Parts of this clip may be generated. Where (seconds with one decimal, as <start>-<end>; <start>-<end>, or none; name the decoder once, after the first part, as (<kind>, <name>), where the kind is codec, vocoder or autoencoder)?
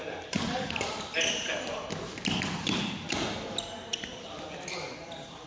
none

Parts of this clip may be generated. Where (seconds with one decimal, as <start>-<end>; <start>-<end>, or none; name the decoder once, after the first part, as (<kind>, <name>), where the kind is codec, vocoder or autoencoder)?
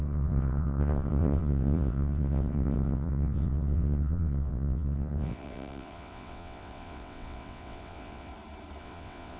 0.0-8.3 (vocoder, WaveNeXt); 8.8-9.4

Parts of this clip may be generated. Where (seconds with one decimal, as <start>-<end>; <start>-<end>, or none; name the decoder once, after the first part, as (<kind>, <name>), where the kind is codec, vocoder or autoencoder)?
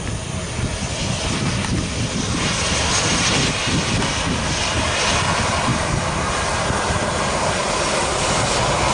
none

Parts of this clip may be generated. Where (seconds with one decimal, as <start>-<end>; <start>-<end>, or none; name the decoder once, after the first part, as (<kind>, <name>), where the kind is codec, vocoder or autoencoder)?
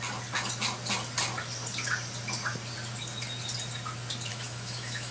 4.3-5.1 (autoencoder, DAC-VAE)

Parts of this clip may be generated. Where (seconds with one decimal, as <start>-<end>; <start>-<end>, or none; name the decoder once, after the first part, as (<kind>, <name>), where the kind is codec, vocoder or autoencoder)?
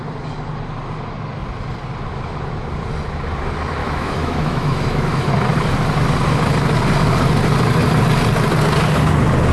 3.8-5.3 (autoencoder, DAC-VAE)